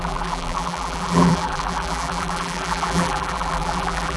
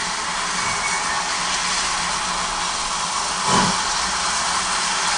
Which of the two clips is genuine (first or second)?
second